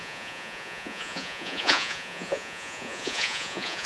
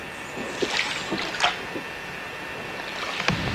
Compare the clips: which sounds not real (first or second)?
first